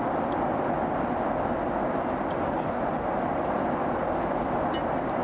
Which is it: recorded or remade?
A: recorded